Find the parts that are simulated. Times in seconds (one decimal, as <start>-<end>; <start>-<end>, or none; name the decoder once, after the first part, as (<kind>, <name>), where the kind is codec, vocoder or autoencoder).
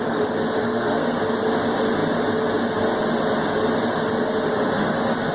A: 0.6-1.2 (codec, SNAC)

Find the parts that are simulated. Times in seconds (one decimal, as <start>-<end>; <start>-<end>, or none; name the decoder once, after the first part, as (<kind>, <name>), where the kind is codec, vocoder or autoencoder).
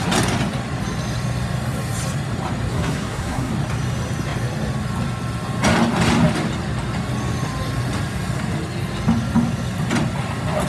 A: 2.7-3.5 (codec, SNAC)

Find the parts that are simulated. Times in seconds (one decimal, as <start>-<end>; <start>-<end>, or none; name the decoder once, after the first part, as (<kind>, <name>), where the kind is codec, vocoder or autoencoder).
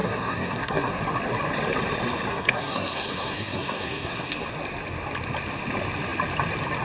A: 0.0-1.0 (codec, SNAC); 2.3-4.4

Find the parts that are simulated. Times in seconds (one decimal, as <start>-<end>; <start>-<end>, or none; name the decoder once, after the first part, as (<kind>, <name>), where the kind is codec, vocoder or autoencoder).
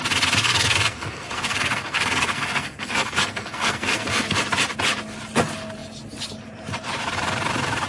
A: 0.4-4.4 (codec, SNAC)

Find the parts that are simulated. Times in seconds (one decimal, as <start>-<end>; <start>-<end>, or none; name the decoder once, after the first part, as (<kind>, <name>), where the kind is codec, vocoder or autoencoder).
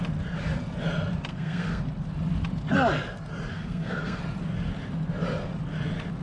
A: 1.3-1.8 (codec, SNAC); 3.5-4.2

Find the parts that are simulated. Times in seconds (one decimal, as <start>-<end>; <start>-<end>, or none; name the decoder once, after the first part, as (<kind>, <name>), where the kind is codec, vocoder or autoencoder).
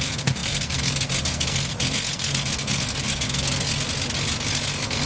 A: 0.0-3.7 (codec, SNAC); 4.5-5.1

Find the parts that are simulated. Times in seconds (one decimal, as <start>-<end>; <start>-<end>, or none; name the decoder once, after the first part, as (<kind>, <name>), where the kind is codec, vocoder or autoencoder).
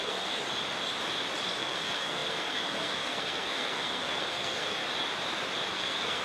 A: 0.0-0.4 (codec, SNAC); 1.6-4.8; 5.7-6.2